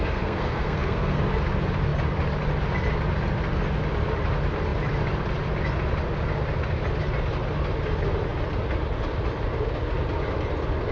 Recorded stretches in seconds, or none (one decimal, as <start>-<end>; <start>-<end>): 1.2-10.9